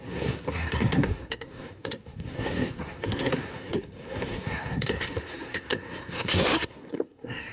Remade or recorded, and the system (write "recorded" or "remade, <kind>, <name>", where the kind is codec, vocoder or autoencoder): remade, codec, SNAC